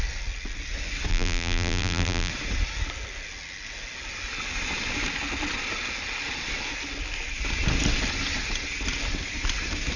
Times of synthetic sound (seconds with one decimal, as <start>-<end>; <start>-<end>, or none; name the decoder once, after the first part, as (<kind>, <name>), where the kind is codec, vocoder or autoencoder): 1.1-2.3 (vocoder, BigVGAN v2)